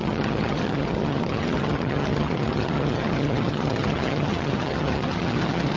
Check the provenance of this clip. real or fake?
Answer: fake